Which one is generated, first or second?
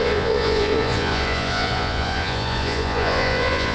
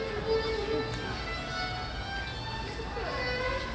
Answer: first